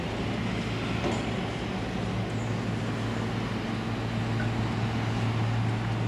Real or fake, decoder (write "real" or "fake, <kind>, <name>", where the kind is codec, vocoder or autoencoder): real